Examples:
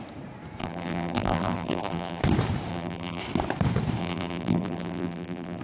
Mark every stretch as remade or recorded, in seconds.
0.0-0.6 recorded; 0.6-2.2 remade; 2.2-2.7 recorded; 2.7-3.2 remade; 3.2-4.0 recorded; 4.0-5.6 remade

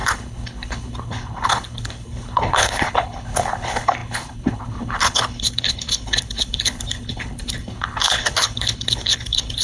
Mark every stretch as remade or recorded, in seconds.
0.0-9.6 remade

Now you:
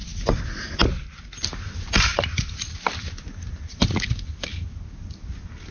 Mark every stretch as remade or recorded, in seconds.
0.0-0.8 remade; 0.8-2.1 recorded; 2.1-3.8 remade; 3.8-5.7 recorded